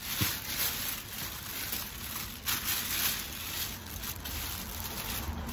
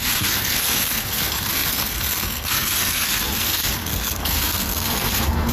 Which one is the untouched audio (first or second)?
first